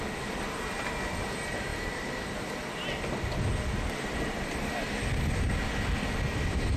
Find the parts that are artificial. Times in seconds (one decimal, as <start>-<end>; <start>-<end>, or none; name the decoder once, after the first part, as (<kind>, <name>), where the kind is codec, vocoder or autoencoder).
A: none